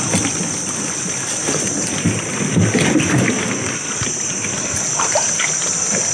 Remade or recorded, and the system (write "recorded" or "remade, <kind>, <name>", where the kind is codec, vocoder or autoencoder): recorded